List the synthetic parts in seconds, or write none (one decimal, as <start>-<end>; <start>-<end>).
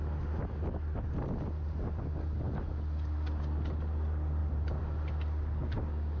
none